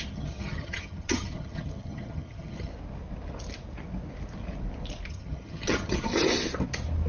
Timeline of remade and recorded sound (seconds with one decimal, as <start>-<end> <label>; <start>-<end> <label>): 0.0-2.7 remade; 2.7-5.1 recorded; 5.1-6.1 remade; 6.1-7.1 recorded

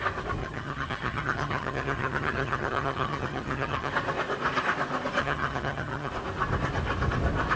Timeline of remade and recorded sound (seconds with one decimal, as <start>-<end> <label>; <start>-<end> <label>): 0.0-0.4 recorded; 0.4-3.9 remade; 3.9-5.2 recorded; 5.2-6.1 remade; 6.1-7.6 recorded

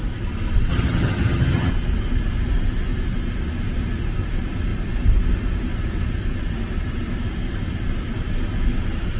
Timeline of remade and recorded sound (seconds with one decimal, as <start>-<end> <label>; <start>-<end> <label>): 0.0-0.7 recorded; 0.7-1.7 remade; 1.7-9.2 recorded